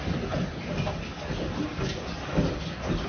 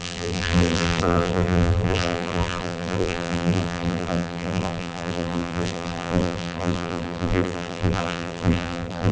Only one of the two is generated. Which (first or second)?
second